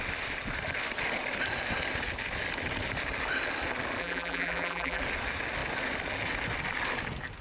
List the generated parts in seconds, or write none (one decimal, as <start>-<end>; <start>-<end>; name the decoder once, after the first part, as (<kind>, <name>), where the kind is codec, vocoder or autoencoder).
4.0-5.0 (vocoder, BigVGAN v2)